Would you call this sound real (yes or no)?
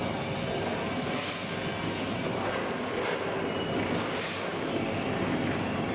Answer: yes